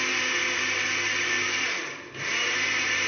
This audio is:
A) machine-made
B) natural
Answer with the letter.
B